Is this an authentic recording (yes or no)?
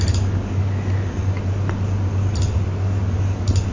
yes